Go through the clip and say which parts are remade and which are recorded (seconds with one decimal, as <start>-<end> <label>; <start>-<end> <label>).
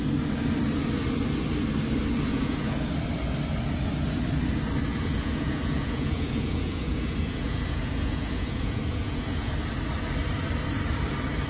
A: 0.0-2.3 recorded; 2.3-2.9 remade; 2.9-4.9 recorded; 4.9-9.5 remade; 9.5-11.5 recorded